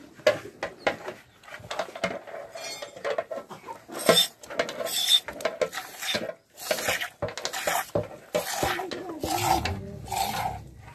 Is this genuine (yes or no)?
yes